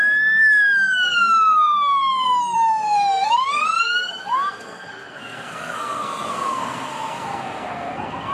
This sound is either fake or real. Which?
fake